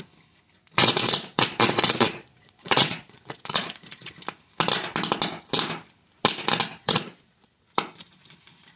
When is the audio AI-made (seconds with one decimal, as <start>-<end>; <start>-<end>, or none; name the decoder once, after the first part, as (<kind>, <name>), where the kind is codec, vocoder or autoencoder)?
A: 0.8-4.1 (vocoder, Vocos); 6.8-7.6